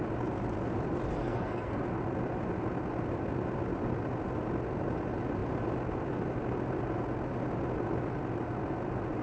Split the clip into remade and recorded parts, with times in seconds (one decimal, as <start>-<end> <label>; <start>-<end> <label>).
0.0-1.2 recorded; 1.2-1.8 remade; 1.8-9.2 recorded